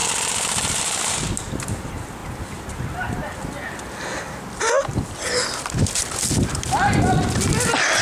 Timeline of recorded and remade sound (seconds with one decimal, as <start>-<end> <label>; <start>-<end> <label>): 0.0-8.0 recorded